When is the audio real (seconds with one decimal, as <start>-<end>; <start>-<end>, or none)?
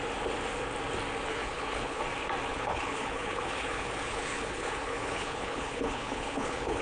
0.0-1.3; 2.0-2.5